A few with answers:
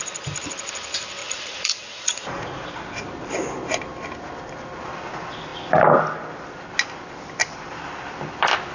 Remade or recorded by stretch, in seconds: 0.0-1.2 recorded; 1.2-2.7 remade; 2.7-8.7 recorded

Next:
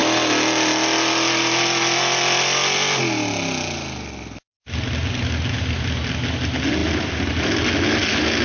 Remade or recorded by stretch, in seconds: 0.0-8.4 recorded

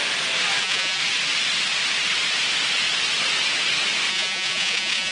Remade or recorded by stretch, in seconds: 0.0-0.6 recorded; 0.6-1.0 remade; 1.0-4.1 recorded; 4.1-5.1 remade

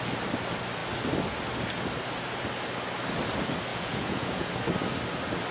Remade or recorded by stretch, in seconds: 0.0-3.7 recorded; 3.7-4.5 remade; 4.5-5.5 recorded

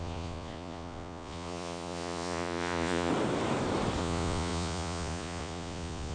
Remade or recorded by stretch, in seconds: 0.0-3.1 remade; 3.1-4.0 recorded; 4.0-6.1 remade

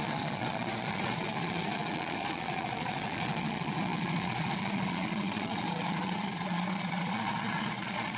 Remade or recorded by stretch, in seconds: 0.0-8.2 remade